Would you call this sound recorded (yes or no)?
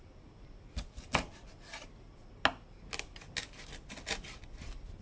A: yes